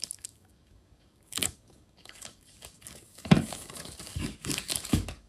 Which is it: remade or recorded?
remade